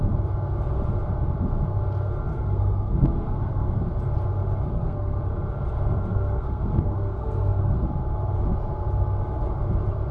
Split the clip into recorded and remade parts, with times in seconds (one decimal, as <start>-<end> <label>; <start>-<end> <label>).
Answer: 0.0-2.3 recorded; 2.3-3.8 remade; 3.8-4.7 recorded; 4.7-5.2 remade; 5.2-6.1 recorded; 6.1-7.9 remade; 7.9-10.1 recorded